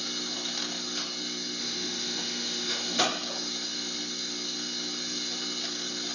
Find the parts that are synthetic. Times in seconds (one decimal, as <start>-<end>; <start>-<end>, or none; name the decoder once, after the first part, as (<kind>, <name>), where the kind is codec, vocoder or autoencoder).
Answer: 1.6-3.0 (autoencoder, DAC-VAE)